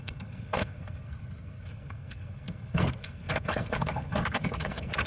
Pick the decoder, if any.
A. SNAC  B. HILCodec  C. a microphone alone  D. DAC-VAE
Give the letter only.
A